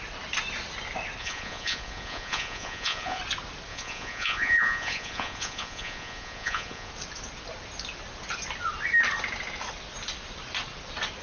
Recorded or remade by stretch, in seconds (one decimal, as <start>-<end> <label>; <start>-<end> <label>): 0.0-1.2 recorded; 1.2-3.2 remade; 3.2-3.7 recorded; 3.7-6.9 remade; 6.9-11.2 recorded